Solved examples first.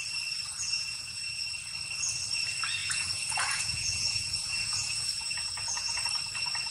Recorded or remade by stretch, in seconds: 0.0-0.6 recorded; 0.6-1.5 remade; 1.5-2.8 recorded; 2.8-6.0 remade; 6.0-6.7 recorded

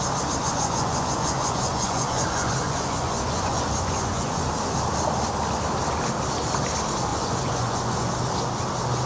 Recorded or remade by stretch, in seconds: 0.0-0.4 recorded; 0.4-4.5 remade; 4.5-7.1 recorded; 7.1-8.1 remade; 8.1-9.1 recorded